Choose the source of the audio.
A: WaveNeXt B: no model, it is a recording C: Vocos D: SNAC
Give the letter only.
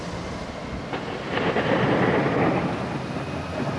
B